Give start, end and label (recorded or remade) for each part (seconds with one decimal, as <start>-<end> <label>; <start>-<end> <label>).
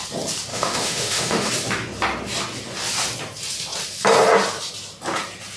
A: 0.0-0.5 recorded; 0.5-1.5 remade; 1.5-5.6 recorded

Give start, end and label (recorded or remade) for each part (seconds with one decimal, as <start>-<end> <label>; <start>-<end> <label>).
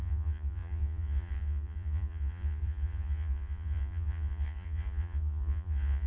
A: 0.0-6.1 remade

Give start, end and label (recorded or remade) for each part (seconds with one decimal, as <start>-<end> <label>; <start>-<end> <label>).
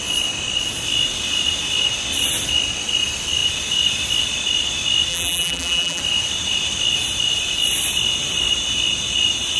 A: 0.0-5.1 recorded; 5.1-6.0 remade; 6.0-9.6 recorded